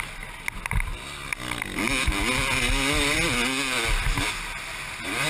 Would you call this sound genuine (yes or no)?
yes